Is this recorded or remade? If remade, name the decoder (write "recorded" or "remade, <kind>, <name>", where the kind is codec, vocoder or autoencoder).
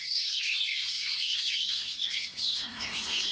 remade, codec, SNAC